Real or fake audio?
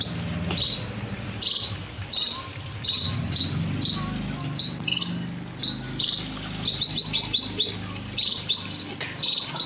real